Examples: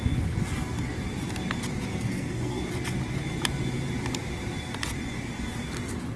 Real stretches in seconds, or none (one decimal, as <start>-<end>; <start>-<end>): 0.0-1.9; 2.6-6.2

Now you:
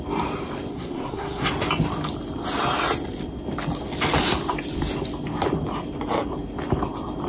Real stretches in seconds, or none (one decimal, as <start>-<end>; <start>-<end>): 0.0-0.7; 1.5-7.3

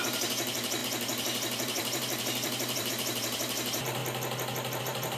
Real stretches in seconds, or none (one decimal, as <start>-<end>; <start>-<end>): 4.0-4.8